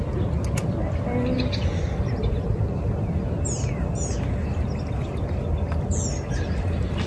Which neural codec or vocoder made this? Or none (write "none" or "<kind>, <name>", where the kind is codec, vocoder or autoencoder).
none